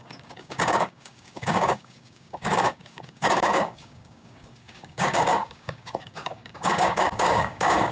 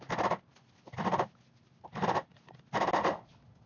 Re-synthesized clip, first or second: first